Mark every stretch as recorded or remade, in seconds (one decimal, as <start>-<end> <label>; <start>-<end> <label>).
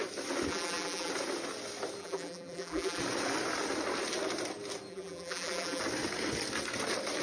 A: 0.0-0.5 recorded; 0.5-1.1 remade; 1.1-2.0 recorded; 2.0-3.0 remade; 3.0-4.9 recorded; 4.9-5.8 remade; 5.8-7.2 recorded